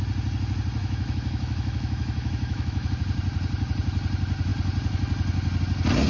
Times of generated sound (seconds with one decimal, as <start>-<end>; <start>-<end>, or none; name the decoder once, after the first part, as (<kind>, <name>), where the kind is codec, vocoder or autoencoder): 0.8-2.9 (autoencoder, DAC-VAE)